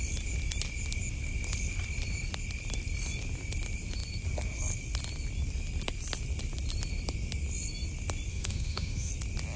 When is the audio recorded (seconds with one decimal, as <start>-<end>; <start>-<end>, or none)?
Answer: 0.0-8.3; 9.1-9.6